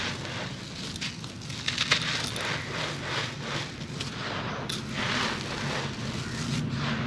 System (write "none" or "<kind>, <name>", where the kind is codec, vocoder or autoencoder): none